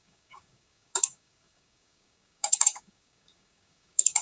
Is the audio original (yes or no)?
no